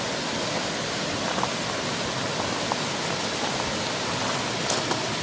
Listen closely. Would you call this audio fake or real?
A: real